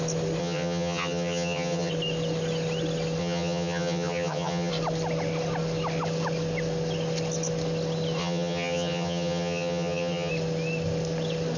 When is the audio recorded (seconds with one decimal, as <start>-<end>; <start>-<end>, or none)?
0.0-0.4; 1.9-3.2; 4.7-8.2; 10.3-11.6